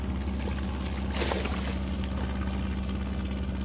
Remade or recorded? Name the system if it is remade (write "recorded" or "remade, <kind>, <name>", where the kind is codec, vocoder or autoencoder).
recorded